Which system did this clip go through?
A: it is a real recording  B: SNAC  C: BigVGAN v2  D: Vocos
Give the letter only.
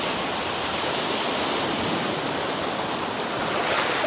A